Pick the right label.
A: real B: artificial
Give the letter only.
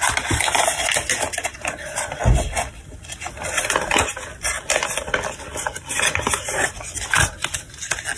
A